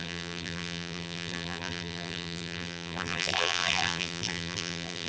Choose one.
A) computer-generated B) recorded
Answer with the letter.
A